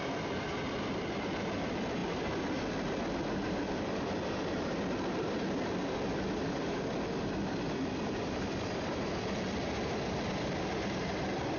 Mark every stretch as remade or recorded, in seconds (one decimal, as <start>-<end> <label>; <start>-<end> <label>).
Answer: 0.0-11.6 recorded